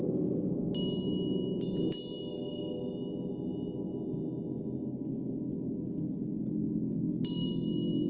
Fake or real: real